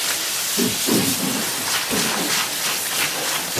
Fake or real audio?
real